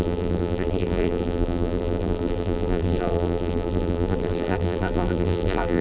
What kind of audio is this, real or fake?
fake